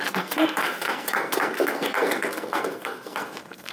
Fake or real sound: fake